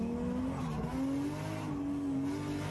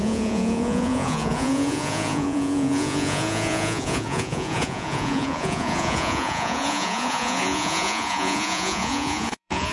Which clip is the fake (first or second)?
second